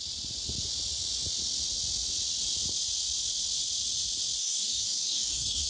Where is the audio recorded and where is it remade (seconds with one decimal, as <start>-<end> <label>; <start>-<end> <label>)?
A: 0.0-4.4 recorded; 4.4-5.7 remade